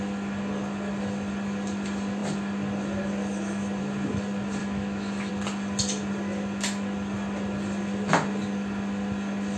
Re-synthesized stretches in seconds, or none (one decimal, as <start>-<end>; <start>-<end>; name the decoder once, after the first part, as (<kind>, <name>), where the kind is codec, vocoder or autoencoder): 4.6-5.3 (autoencoder, DAC-VAE)